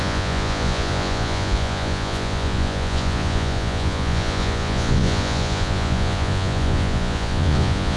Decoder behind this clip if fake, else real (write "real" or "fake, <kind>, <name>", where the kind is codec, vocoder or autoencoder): fake, vocoder, Vocos